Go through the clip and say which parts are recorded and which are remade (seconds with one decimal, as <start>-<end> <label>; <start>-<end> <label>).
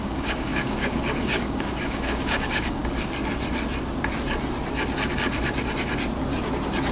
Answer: 0.0-2.8 remade; 2.8-6.9 recorded